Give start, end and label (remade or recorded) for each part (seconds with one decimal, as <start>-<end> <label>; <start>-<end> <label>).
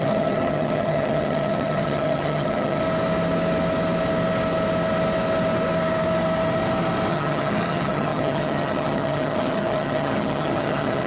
0.0-2.8 remade; 2.8-7.1 recorded; 7.1-11.1 remade